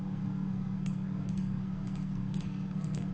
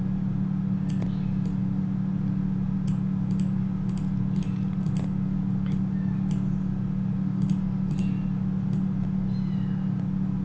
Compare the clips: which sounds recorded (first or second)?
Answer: second